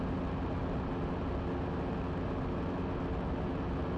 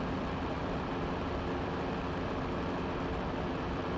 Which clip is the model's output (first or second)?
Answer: second